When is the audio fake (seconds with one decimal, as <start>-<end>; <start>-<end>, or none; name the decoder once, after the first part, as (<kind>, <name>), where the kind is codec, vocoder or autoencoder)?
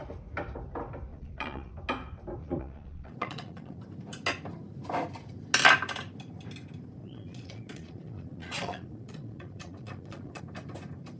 1.1-1.7 (vocoder, Vocos); 2.4-3.8; 7.0-10.4